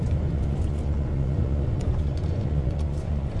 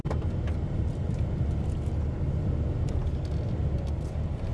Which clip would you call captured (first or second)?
second